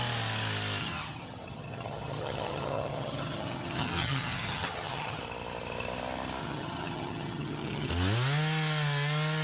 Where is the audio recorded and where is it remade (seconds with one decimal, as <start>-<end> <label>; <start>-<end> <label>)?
0.0-0.8 recorded; 0.8-5.2 remade; 5.2-6.4 recorded; 6.4-7.9 remade; 7.9-9.4 recorded